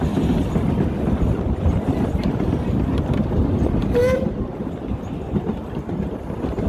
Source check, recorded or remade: recorded